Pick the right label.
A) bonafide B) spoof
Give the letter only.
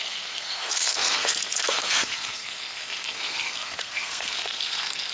B